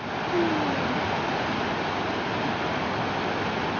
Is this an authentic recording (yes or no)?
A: yes